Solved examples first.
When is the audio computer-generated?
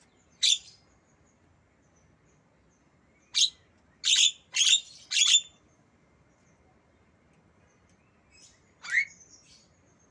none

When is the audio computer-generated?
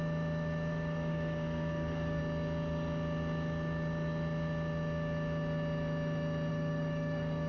0.7-2.2 (codec, DAC); 6.5-7.5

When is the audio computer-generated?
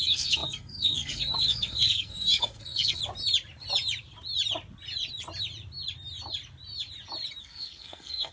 0.0-3.0 (codec, SNAC); 7.4-8.3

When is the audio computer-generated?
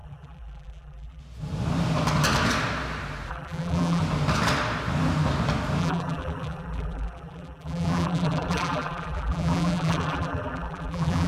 0.0-1.2 (vocoder, BigVGAN v2); 3.3-4.0; 5.8-11.3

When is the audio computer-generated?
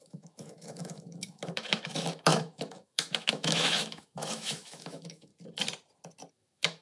0.0-5.3 (autoencoder, DAC-VAE); 6.3-6.8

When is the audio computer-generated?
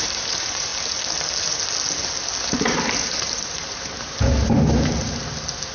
0.0-0.7 (vocoder, BigVGAN v2); 2.4-5.7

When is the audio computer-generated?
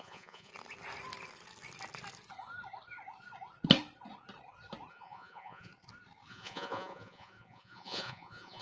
0.0-0.5 (vocoder, Vocos); 4.9-5.7; 6.3-8.6